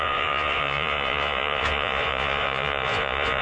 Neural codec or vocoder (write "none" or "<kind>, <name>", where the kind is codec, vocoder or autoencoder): vocoder, Vocos